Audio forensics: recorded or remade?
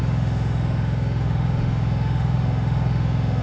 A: remade